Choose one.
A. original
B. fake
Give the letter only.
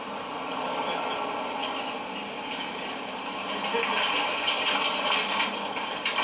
A